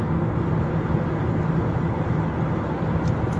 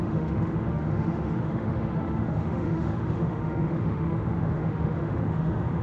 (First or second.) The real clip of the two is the first